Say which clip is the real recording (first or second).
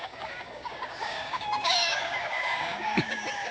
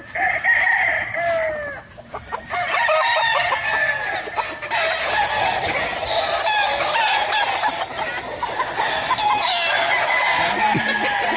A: second